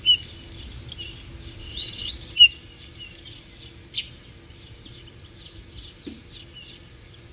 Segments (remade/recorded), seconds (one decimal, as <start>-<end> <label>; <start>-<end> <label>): 0.0-1.6 recorded; 1.6-2.1 remade; 2.1-7.3 recorded